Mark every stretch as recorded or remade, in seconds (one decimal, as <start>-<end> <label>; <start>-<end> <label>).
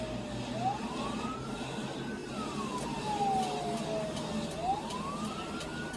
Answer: 0.0-6.0 recorded